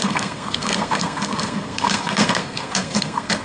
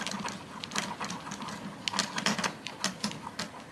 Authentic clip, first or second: second